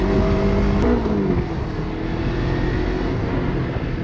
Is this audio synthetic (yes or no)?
no